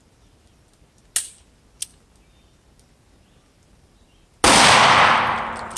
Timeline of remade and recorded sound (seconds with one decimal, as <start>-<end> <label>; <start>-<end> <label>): 0.0-5.8 recorded